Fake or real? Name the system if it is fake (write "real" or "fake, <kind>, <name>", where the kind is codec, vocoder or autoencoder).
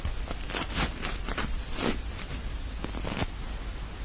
real